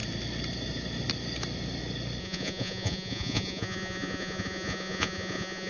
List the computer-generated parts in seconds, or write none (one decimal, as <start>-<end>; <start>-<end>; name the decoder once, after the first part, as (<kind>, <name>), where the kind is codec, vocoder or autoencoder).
2.2-5.7 (vocoder, Vocos)